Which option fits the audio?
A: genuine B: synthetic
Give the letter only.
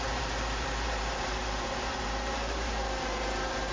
B